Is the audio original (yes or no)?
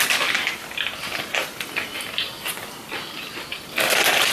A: no